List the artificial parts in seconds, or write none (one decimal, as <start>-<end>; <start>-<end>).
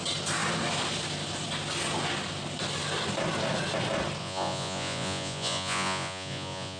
4.2-6.8